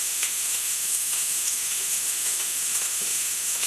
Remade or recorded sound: remade